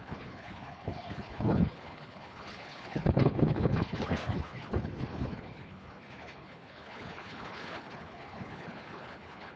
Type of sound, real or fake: fake